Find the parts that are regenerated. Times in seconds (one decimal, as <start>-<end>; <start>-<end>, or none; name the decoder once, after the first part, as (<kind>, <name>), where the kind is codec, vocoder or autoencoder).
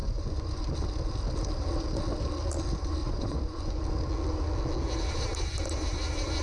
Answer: 0.0-0.6 (vocoder, Vocos); 3.0-3.8